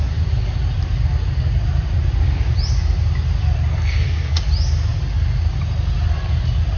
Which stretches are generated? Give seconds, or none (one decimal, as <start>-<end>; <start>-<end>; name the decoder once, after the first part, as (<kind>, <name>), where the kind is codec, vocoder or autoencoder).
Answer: 3.7-4.4 (codec, SNAC)